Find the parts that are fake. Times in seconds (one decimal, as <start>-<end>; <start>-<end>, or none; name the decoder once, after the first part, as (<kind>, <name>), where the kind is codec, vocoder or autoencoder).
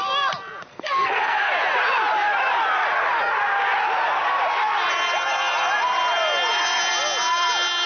0.7-1.5 (codec, SNAC)